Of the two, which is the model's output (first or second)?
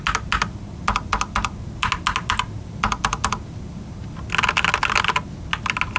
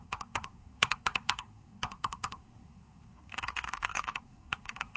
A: second